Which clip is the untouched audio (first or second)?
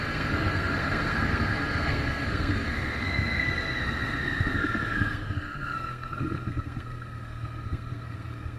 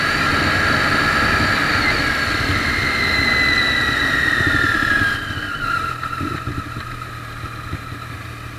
second